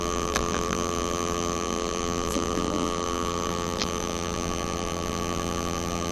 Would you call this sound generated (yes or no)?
yes